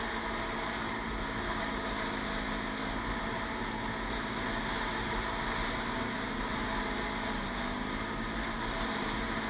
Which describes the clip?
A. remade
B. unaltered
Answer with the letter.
B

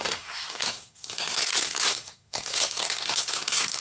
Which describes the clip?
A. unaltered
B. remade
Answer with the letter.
B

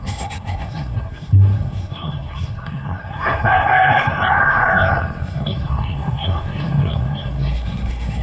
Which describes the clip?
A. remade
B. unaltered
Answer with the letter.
A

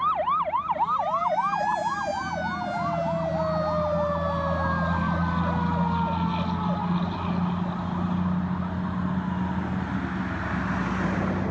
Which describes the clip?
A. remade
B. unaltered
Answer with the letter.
B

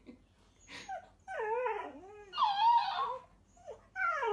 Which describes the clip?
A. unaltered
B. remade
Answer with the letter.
A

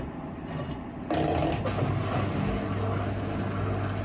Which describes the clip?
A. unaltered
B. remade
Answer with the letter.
A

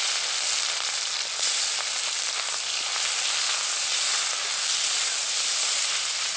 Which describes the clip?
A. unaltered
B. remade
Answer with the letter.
A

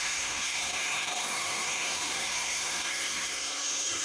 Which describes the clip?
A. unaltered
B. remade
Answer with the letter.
B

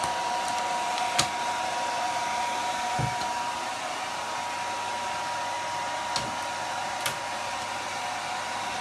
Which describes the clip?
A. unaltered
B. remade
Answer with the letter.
A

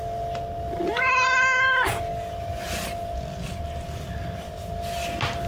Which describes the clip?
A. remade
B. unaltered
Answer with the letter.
B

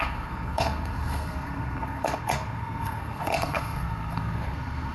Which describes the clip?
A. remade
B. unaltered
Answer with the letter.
A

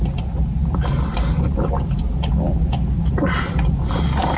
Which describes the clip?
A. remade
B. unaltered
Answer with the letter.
B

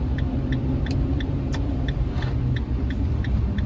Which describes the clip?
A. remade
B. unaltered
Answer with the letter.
B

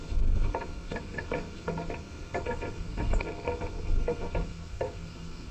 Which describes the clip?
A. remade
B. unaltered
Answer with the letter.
A